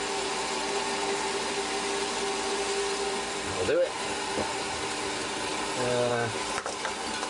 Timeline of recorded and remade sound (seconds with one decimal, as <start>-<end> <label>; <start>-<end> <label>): 0.0-7.3 recorded